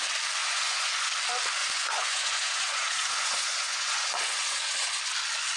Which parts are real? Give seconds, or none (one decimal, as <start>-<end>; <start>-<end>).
0.0-0.4; 1.1-1.6; 5.0-5.6